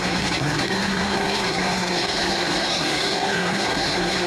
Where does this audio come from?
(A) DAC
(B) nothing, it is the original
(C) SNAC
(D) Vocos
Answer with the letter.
C